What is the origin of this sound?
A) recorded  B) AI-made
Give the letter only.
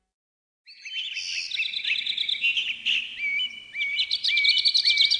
A